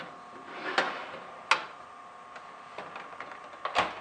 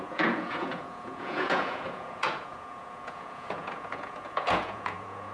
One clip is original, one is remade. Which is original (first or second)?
first